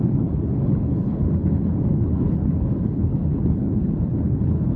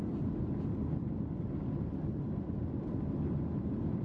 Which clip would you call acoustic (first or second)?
second